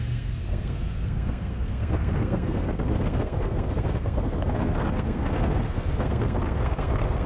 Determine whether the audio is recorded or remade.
remade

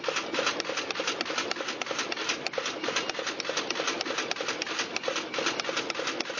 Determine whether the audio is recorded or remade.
recorded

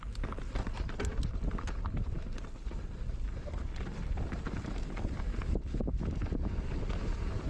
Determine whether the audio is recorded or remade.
recorded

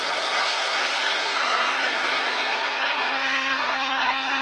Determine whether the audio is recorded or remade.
remade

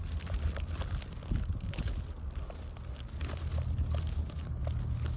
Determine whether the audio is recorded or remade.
recorded